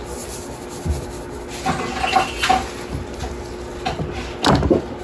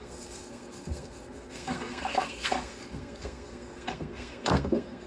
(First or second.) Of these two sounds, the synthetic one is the second